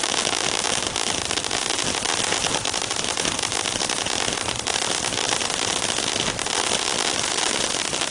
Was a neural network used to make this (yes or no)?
no